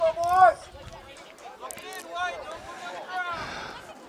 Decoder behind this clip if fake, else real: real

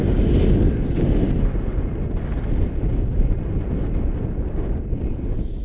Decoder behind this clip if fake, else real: real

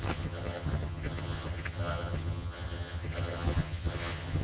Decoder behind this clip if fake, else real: fake, vocoder, HiFi-GAN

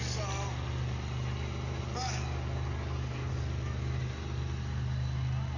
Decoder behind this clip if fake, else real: real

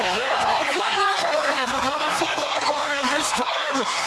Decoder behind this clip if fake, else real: fake, codec, SNAC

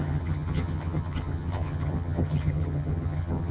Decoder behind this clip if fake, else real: fake, vocoder, HiFi-GAN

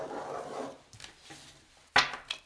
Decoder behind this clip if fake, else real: real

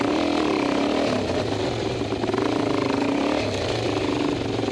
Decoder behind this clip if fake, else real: real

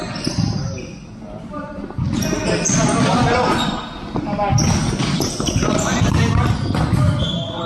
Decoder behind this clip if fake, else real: real